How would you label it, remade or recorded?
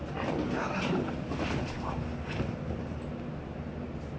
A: recorded